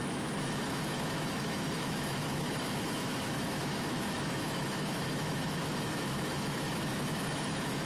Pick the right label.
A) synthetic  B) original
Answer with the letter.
A